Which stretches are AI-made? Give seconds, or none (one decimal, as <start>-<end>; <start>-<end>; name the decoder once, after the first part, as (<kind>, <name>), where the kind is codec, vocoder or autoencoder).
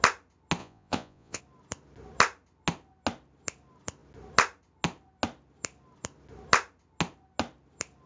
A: 0.6-1.4 (vocoder, Vocos)